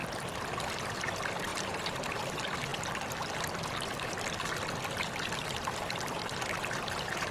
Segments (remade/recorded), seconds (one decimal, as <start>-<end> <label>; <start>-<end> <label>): 0.0-1.5 recorded; 1.5-2.1 remade; 2.1-7.3 recorded